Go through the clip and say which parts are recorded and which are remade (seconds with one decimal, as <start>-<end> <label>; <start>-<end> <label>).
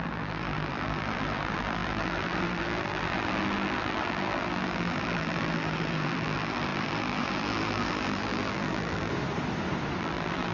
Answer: 0.0-9.1 remade; 9.1-10.0 recorded; 10.0-10.5 remade